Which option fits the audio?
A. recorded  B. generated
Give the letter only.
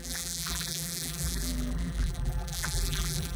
B